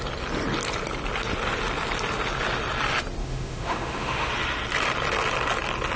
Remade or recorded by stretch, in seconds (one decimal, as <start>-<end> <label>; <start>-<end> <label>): 0.0-3.2 recorded; 3.2-4.3 remade; 4.3-6.0 recorded